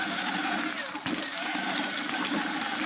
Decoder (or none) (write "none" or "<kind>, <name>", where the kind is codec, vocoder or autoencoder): none